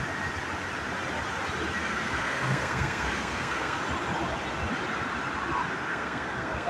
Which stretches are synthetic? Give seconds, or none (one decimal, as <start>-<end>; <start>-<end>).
1.8-3.8; 5.9-6.7